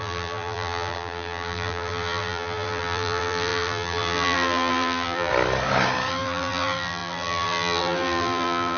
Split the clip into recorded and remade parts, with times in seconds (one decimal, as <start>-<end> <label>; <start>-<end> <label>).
0.0-5.3 remade; 5.3-6.1 recorded; 6.1-8.8 remade